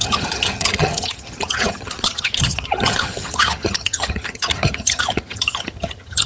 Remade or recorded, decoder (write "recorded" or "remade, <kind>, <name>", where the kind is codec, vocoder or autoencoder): remade, vocoder, HiFi-GAN